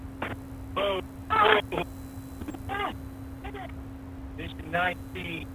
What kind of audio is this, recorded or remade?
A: recorded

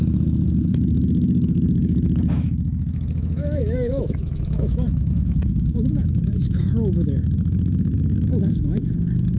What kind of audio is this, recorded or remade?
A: remade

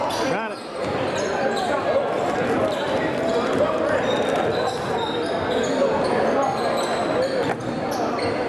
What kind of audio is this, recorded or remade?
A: recorded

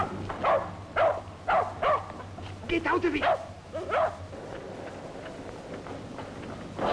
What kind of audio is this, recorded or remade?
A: recorded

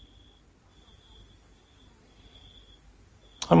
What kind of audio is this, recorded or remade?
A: recorded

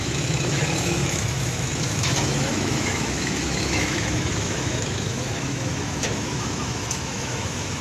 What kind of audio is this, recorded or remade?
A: remade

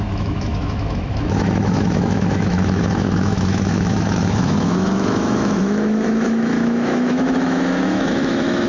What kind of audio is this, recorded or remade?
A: remade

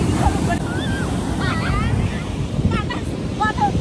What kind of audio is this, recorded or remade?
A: recorded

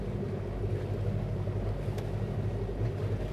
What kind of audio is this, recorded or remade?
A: recorded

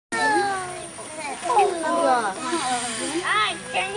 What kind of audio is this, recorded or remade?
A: recorded